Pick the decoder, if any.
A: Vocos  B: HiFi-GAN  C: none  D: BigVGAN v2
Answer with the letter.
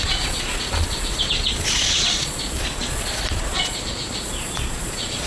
A